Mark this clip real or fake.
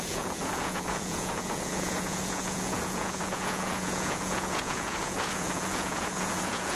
fake